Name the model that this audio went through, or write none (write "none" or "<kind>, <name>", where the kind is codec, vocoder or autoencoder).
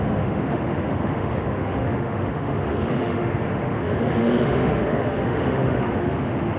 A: autoencoder, DAC-VAE